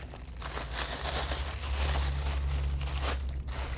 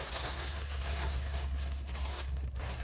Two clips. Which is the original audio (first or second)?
first